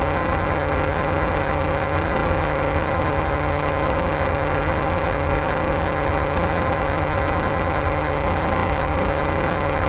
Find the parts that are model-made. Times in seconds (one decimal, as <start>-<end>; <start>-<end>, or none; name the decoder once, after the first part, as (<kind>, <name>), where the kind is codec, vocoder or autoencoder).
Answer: 0.0-9.9 (vocoder, HiFi-GAN)